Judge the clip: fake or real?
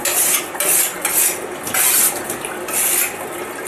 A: real